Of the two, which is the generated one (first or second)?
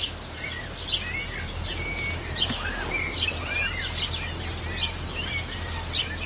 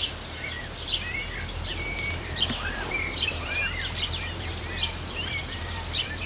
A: second